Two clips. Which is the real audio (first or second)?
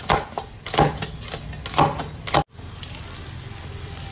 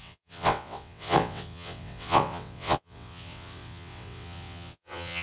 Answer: first